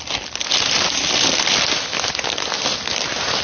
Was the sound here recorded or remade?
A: remade